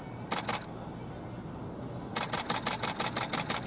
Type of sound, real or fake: real